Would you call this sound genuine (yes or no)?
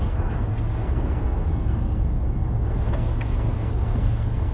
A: no